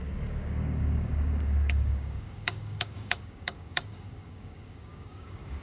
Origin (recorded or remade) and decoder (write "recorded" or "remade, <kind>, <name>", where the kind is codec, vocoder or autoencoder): remade, codec, DAC